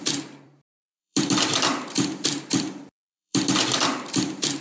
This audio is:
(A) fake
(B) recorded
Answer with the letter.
A